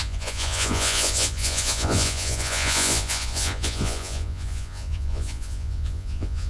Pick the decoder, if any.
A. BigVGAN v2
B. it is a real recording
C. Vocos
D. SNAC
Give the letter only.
C